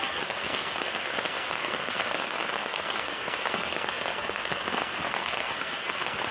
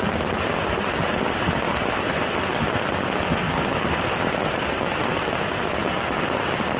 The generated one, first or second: first